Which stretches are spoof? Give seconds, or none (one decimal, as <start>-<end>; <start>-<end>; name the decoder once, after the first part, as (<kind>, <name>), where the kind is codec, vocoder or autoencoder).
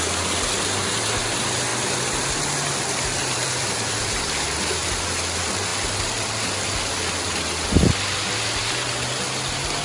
1.7-5.0 (vocoder, BigVGAN v2); 5.7-7.3